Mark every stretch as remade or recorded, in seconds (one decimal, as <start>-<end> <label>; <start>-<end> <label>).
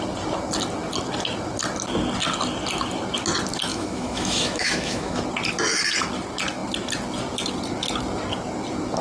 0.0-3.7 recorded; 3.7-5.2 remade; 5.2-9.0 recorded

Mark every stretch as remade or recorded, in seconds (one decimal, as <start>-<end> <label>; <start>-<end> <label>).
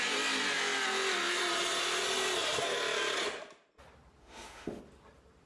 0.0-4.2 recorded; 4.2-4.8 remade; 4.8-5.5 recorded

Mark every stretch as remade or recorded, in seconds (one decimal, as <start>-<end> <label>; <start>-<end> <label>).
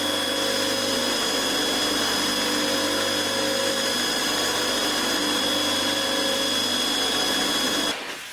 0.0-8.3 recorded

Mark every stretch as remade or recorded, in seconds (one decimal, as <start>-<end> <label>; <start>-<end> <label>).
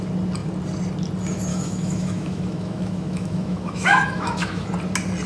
0.0-1.5 recorded; 1.5-4.7 remade; 4.7-5.3 recorded